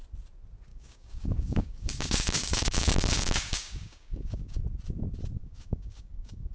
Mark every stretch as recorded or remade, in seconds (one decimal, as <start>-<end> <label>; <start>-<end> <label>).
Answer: 0.0-0.7 recorded; 0.7-4.6 remade; 4.6-5.4 recorded; 5.4-6.5 remade